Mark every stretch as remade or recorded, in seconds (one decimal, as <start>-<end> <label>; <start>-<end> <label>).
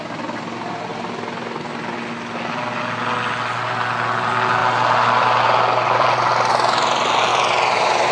0.0-4.6 recorded; 4.6-6.5 remade; 6.5-7.3 recorded; 7.3-8.1 remade